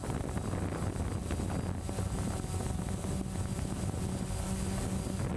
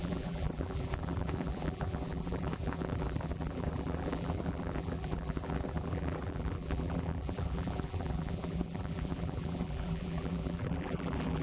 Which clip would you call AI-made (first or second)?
second